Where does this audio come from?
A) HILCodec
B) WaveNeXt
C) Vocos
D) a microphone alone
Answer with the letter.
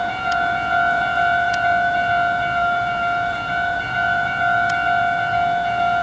C